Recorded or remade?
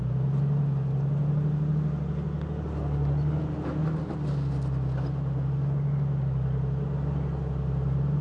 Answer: recorded